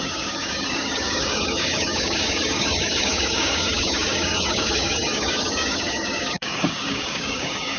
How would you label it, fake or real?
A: fake